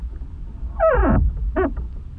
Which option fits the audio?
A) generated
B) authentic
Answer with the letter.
B